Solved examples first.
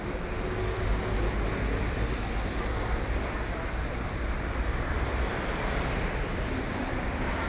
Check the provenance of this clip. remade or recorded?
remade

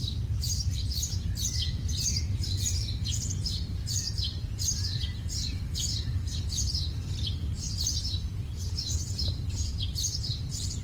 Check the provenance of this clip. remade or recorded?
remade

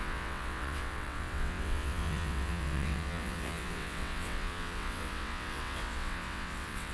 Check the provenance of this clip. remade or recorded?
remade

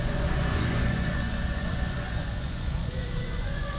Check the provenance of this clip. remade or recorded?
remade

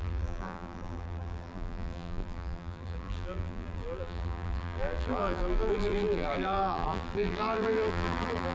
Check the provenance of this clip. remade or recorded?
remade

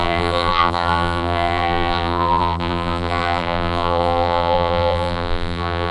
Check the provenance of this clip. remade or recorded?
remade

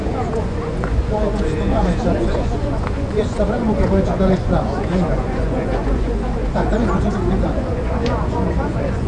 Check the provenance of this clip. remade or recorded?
remade